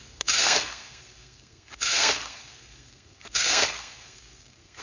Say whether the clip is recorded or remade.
remade